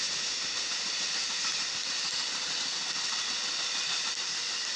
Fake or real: real